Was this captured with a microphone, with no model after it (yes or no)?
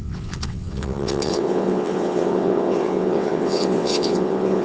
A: no